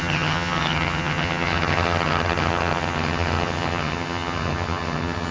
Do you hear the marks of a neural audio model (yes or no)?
yes